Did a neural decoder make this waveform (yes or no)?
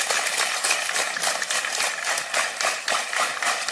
no